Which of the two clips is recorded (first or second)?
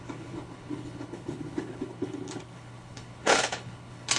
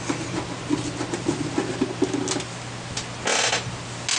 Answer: second